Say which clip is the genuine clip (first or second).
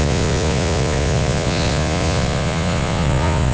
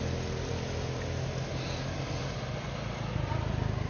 second